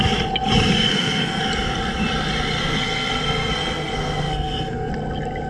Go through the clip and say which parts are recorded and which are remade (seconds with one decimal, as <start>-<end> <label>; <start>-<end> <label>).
0.0-0.9 recorded; 0.9-1.4 remade; 1.4-2.6 recorded; 2.6-4.9 remade; 4.9-5.5 recorded